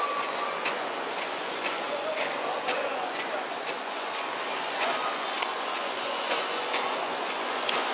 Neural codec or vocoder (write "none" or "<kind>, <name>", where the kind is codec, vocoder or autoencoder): vocoder, Vocos